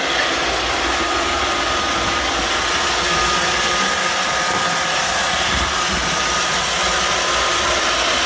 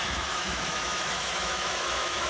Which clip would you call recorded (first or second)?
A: first